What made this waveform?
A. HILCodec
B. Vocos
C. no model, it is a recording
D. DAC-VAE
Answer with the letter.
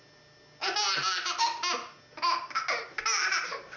C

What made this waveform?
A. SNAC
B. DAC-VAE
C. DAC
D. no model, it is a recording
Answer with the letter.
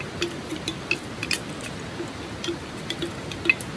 D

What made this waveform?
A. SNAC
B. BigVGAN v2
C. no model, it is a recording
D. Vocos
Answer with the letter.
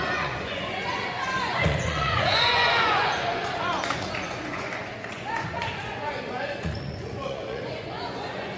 D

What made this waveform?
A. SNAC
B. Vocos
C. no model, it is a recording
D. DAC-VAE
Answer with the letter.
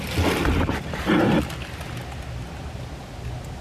C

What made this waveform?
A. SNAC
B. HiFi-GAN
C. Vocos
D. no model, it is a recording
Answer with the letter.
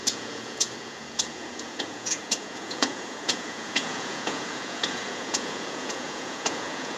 C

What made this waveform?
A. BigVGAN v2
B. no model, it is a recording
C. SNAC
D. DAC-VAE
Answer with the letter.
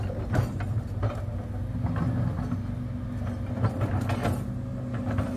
B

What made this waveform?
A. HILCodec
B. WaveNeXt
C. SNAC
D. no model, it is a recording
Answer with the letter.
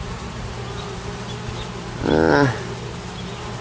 D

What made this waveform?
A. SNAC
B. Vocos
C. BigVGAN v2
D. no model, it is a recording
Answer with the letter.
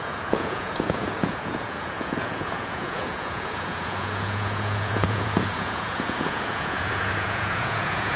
B